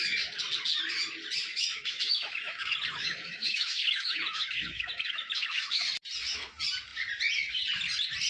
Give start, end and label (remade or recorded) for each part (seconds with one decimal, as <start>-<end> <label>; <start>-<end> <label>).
0.0-1.5 recorded; 1.5-5.8 remade; 5.8-8.3 recorded